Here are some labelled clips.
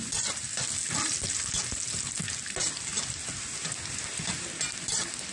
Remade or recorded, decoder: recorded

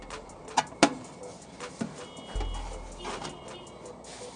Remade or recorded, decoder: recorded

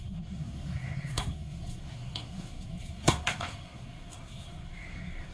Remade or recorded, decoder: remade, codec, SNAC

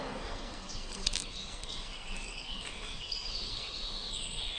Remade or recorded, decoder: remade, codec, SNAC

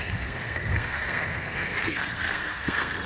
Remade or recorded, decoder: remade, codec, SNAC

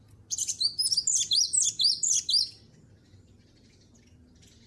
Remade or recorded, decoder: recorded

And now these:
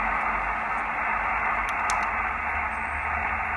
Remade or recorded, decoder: recorded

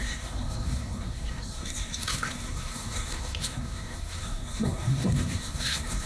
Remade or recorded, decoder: remade, codec, SNAC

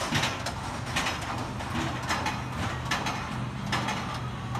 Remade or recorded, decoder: recorded